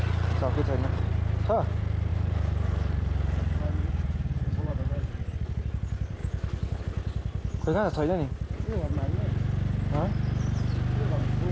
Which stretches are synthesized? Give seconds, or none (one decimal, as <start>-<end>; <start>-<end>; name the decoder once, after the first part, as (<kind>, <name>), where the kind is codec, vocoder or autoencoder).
2.1-5.1 (vocoder, BigVGAN v2)